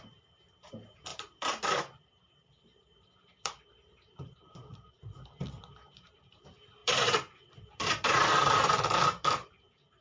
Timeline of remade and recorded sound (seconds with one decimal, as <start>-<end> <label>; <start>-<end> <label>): 0.0-10.0 remade